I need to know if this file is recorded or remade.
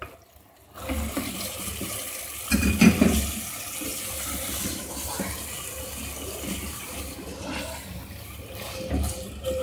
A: remade